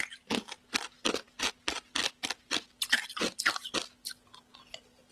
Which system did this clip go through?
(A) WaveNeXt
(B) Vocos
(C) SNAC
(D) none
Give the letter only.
D